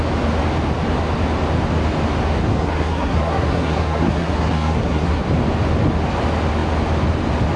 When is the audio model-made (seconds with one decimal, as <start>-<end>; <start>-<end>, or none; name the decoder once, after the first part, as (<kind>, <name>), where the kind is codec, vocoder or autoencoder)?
2.5-5.2 (codec, SNAC)